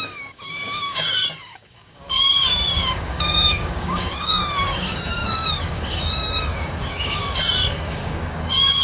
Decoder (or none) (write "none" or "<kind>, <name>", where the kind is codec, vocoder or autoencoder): codec, DAC